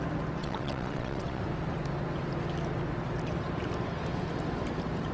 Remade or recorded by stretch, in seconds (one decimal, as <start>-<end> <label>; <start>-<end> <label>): 0.0-0.4 recorded; 0.4-1.4 remade; 1.4-5.1 recorded